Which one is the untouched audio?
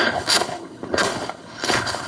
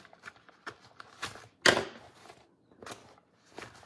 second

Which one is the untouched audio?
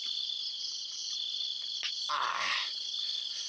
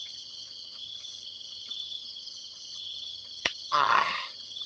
first